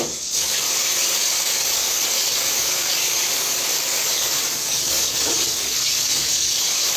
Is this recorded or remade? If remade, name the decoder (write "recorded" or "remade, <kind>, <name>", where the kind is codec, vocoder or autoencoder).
remade, codec, DAC